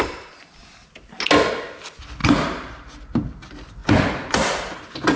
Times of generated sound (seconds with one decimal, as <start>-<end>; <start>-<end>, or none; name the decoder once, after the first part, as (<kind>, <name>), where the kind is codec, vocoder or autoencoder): none